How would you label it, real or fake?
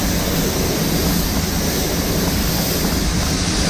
real